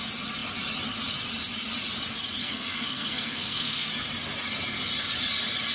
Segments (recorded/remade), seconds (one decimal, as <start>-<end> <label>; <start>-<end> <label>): 0.0-2.4 recorded; 2.4-3.9 remade; 3.9-5.7 recorded